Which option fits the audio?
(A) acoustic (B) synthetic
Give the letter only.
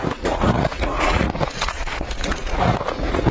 B